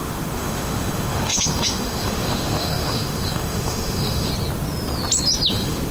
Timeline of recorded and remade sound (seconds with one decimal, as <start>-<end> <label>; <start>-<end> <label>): 0.0-4.3 remade; 4.3-5.5 recorded; 5.5-5.9 remade

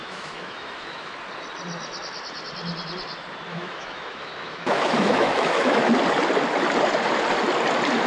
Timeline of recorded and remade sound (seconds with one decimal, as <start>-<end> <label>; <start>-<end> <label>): 0.0-1.2 remade; 1.2-3.5 recorded; 3.5-5.9 remade; 5.9-8.1 recorded

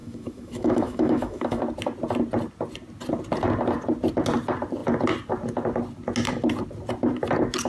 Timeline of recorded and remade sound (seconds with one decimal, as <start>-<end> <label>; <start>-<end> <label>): 0.0-1.6 remade; 1.6-7.7 recorded

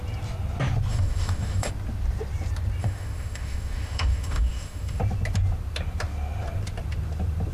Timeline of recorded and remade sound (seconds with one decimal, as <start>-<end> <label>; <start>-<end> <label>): 0.0-0.9 recorded; 0.9-1.7 remade; 1.7-2.8 recorded; 2.8-5.0 remade; 5.0-7.5 recorded

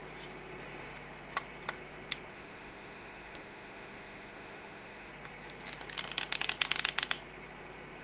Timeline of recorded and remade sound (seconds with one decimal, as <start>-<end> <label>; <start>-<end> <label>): 0.0-2.3 recorded; 2.3-5.1 remade; 5.1-8.0 recorded